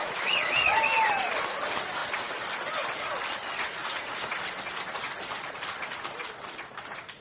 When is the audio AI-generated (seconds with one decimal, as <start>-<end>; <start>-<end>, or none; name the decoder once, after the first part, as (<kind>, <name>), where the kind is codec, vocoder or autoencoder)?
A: 0.0-0.8 (vocoder, Vocos); 3.8-4.4